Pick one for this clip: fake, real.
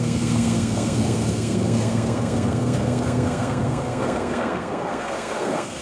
fake